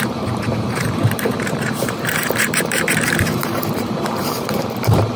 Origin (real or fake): fake